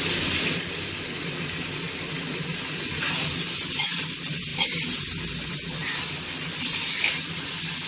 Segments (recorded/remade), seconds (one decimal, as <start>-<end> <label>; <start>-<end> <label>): 0.0-7.9 recorded